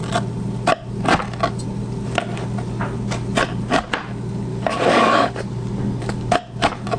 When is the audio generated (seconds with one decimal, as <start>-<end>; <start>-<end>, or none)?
4.5-6.3